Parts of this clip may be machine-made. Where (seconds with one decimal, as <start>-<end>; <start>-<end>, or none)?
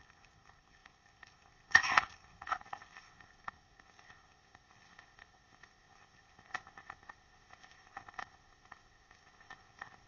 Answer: 0.0-10.1